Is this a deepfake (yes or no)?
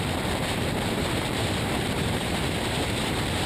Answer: yes